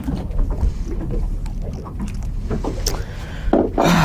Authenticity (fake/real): real